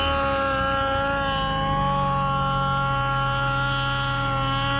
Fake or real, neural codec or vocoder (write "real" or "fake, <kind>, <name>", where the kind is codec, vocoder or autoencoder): real